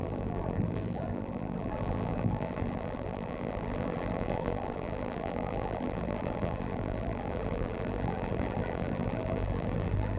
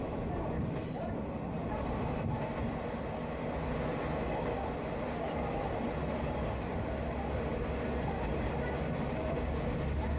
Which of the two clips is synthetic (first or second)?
first